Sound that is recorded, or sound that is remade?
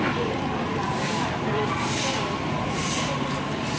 recorded